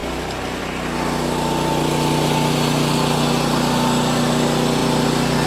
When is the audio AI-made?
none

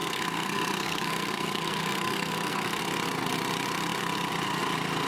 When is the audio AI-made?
0.0-2.8 (codec, SNAC)

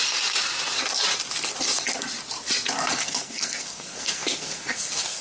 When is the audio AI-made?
2.9-5.2 (codec, SNAC)

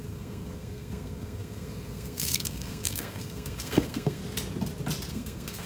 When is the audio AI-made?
0.0-4.2 (codec, SNAC); 5.1-5.7

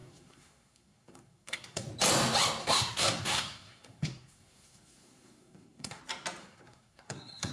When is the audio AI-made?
0.0-1.9 (codec, SNAC); 2.6-6.0; 6.4-7.5

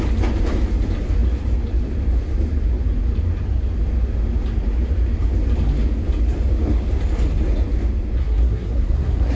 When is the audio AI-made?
8.2-9.4 (codec, SNAC)

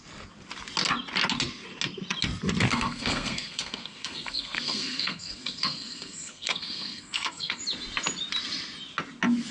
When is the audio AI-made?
2.7-7.6 (codec, SNAC)